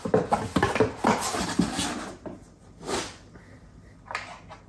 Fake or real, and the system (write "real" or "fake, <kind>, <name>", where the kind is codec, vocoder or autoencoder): real